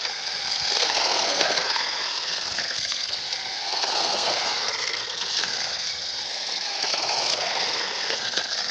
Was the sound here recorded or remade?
remade